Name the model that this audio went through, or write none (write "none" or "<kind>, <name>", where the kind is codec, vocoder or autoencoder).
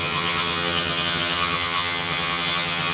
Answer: vocoder, HiFi-GAN